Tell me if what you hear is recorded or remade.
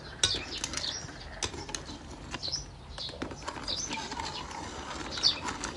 recorded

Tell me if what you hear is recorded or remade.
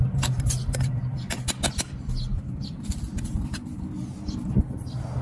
recorded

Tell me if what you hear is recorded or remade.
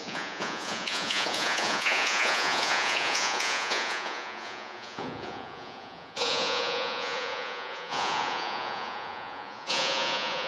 remade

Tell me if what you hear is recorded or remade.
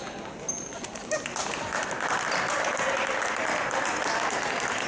recorded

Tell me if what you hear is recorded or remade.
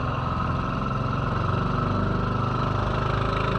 recorded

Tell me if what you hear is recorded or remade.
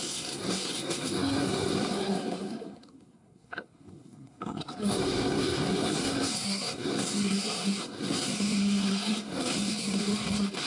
remade